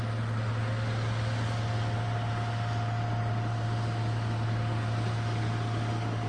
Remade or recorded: recorded